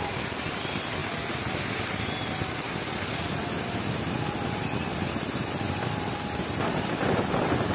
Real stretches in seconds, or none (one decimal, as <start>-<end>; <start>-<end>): 1.0-2.4